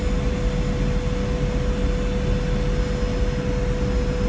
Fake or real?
real